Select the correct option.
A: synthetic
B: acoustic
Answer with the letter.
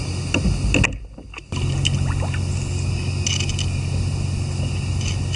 B